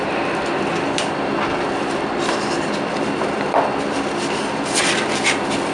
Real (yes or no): yes